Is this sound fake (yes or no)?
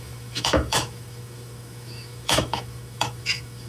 yes